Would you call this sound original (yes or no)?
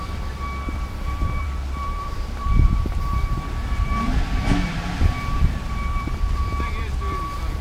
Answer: no